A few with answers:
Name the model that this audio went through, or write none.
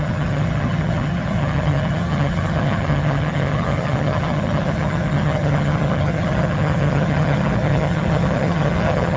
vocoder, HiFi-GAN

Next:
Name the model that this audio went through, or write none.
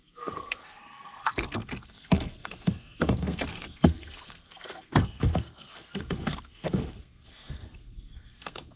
codec, SNAC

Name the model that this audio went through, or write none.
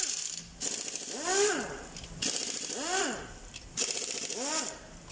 none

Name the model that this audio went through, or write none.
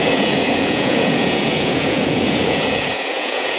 vocoder, Vocos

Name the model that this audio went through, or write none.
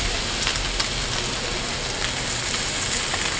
none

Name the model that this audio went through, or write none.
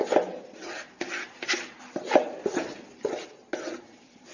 none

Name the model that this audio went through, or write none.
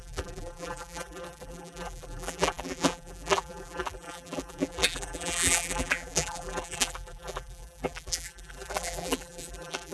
vocoder, BigVGAN v2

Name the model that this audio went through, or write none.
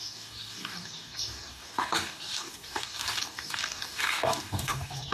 codec, DAC